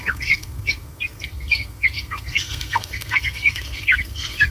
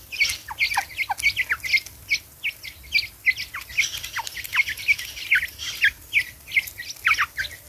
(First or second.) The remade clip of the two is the first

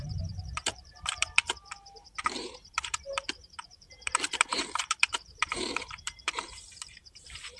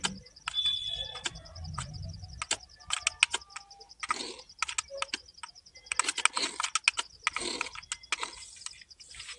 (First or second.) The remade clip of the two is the first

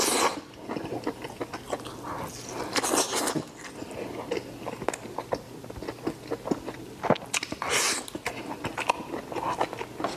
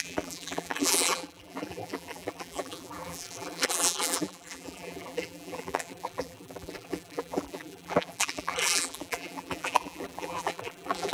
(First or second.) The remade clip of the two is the second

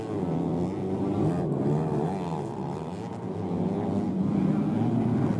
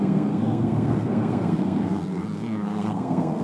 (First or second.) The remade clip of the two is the second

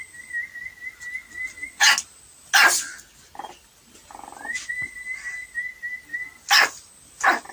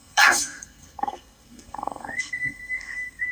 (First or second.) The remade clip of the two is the second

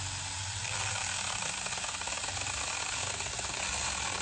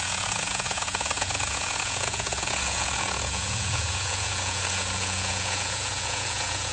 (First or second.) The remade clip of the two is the second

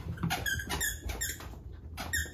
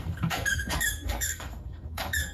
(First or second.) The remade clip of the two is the second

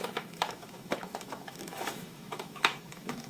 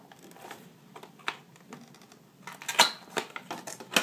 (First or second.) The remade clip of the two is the first